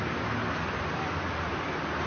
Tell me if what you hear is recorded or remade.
recorded